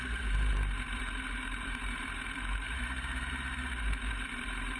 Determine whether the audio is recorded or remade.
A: remade